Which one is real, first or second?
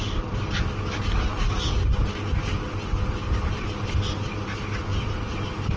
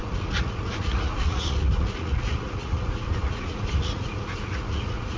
first